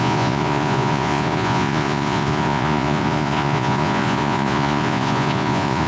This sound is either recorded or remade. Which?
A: remade